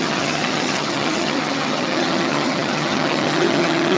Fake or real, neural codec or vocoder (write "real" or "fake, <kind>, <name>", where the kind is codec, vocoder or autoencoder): fake, vocoder, HiFi-GAN